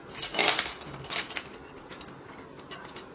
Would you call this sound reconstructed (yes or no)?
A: no